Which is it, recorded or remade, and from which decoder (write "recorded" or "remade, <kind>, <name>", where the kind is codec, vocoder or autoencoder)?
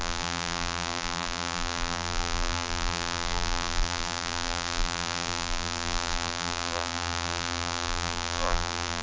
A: remade, vocoder, BigVGAN v2